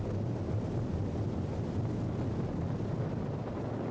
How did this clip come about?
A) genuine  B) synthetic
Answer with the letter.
A